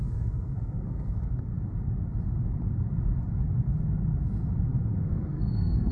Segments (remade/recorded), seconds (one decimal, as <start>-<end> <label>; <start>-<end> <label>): 0.0-1.5 remade; 1.5-5.0 recorded; 5.0-5.9 remade